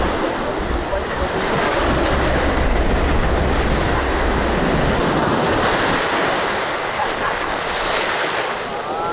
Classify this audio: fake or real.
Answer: real